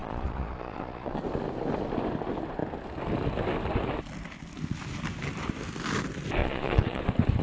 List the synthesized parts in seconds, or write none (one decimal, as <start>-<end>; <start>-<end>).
0.0-1.2; 6.4-7.0